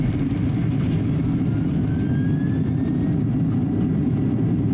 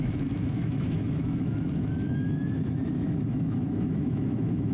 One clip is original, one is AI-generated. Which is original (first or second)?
first